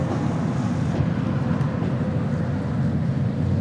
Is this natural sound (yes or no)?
yes